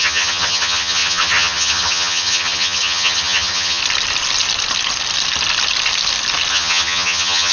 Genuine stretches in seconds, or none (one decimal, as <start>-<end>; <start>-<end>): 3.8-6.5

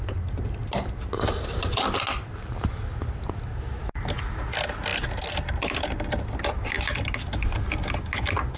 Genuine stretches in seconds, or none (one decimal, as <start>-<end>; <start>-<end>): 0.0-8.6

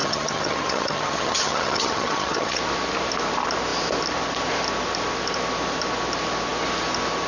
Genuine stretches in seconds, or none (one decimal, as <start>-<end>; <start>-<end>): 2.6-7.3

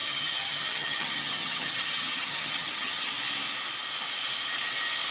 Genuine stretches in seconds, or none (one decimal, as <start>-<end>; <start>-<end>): 3.1-5.1

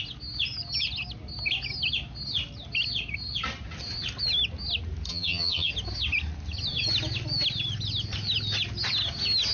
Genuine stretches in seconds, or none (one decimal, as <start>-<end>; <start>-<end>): 0.0-5.1; 5.7-9.5

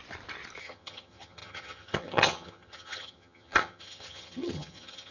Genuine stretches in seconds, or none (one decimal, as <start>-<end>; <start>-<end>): 0.0-0.6

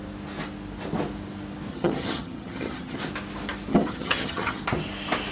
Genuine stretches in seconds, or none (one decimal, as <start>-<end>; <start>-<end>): 0.0-1.7; 3.0-3.7; 4.6-5.3

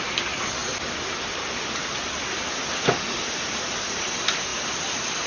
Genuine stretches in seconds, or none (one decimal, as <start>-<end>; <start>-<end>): 0.0-5.3